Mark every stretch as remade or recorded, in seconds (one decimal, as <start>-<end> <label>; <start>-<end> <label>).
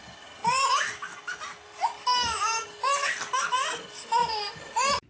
0.0-4.2 recorded; 4.2-5.1 remade